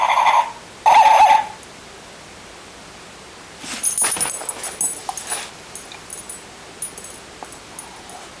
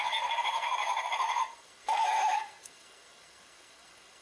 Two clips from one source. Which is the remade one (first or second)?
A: second